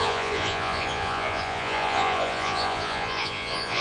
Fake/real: fake